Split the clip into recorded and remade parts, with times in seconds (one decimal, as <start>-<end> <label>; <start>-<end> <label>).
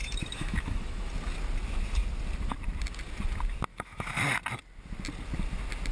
0.0-1.1 remade; 1.1-3.7 recorded; 3.7-4.2 remade; 4.2-5.9 recorded